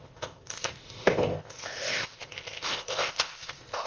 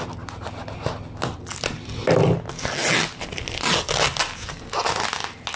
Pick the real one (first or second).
second